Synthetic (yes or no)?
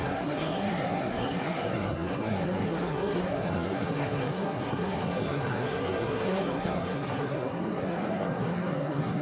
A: yes